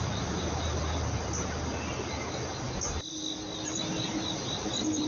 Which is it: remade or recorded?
remade